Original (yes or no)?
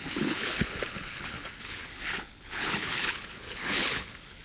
no